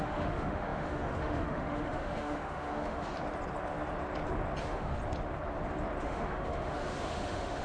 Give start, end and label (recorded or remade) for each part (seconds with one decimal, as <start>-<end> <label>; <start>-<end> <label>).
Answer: 0.0-3.1 remade; 3.1-4.6 recorded; 4.6-5.0 remade; 5.0-6.0 recorded; 6.0-7.6 remade